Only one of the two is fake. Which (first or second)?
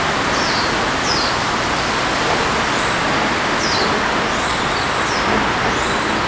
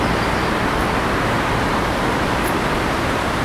second